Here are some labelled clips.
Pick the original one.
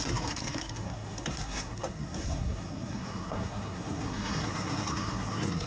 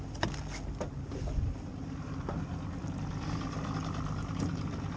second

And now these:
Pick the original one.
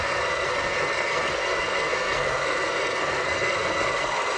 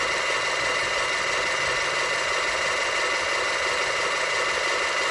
second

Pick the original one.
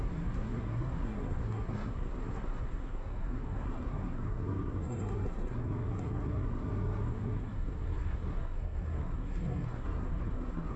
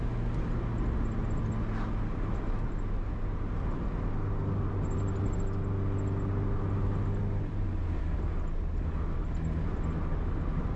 second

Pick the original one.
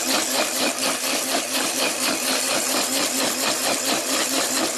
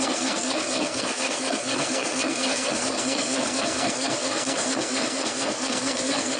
first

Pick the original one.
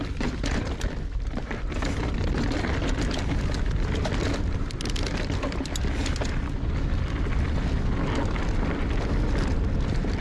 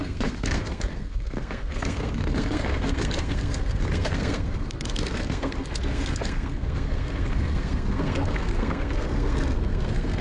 first